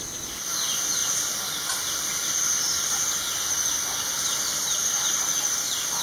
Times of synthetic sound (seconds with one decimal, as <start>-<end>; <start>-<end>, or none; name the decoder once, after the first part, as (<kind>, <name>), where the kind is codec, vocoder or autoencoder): none